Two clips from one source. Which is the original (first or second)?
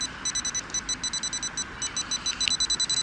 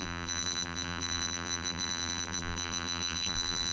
first